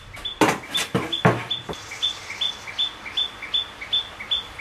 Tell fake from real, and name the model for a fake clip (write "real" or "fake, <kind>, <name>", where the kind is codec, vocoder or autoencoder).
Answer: real